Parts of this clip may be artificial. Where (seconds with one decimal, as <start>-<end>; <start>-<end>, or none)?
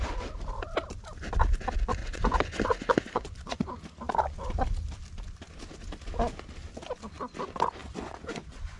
2.0-3.8; 7.8-8.8